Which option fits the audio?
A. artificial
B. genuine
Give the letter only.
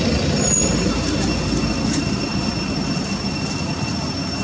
B